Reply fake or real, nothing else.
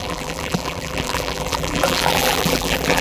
fake